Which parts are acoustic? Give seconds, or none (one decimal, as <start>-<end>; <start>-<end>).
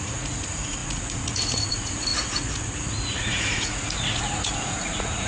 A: none